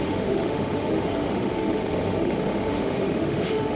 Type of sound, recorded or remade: remade